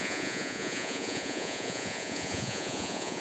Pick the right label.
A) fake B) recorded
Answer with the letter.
A